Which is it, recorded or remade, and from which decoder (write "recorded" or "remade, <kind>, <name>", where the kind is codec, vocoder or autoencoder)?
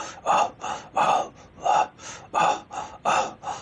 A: recorded